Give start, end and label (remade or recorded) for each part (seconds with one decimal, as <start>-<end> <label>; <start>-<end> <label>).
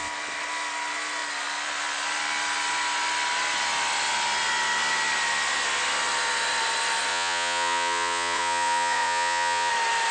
0.0-7.1 recorded; 7.1-9.7 remade; 9.7-10.1 recorded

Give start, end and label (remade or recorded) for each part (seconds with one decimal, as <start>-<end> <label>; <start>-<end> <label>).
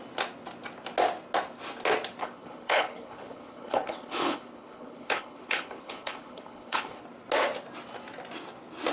0.0-2.2 recorded; 2.2-7.0 remade; 7.0-8.9 recorded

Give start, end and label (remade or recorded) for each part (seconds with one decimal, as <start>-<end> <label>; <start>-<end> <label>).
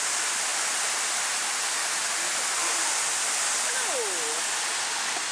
0.0-5.3 recorded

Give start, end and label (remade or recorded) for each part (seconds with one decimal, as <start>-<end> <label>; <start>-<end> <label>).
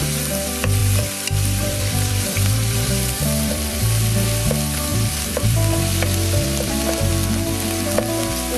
0.0-0.8 recorded; 0.8-3.8 remade; 3.8-4.9 recorded; 4.9-7.1 remade; 7.1-8.6 recorded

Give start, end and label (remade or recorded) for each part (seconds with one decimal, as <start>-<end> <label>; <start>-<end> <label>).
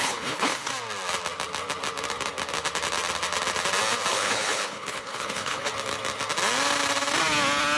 0.0-0.7 remade; 0.7-4.1 recorded; 4.1-5.7 remade; 5.7-7.8 recorded